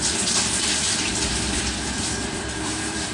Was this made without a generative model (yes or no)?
no